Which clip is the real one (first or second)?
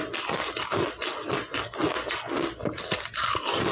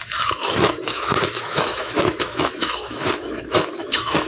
first